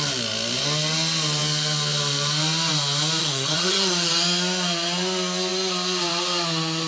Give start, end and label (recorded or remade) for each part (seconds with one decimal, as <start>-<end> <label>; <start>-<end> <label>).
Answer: 0.0-3.2 recorded; 3.2-4.1 remade; 4.1-6.9 recorded